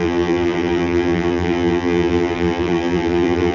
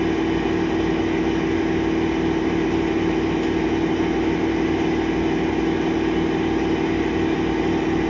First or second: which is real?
second